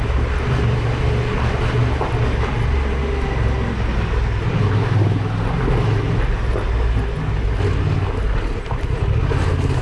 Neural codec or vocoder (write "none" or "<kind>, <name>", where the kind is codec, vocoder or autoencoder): none